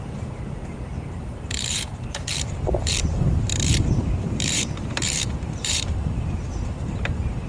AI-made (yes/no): yes